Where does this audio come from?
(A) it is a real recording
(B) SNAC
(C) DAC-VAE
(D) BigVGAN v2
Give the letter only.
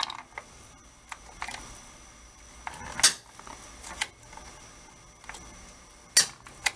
A